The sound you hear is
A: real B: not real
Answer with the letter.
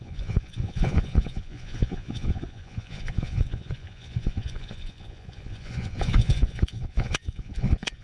B